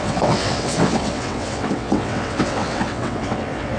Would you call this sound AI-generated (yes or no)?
yes